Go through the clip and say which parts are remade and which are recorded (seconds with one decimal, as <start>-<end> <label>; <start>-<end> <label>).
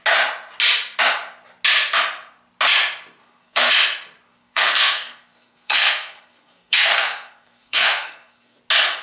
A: 0.0-3.2 recorded; 3.2-3.7 remade; 3.7-4.3 recorded; 4.3-8.6 remade; 8.6-9.0 recorded